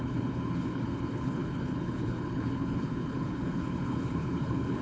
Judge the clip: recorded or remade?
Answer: remade